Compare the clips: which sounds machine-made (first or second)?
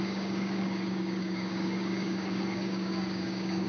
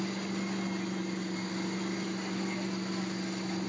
first